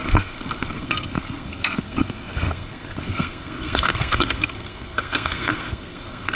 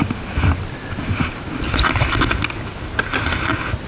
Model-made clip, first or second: first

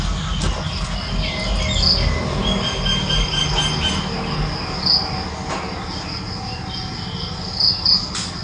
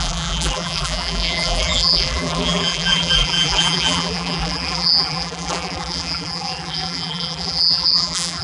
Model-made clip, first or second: second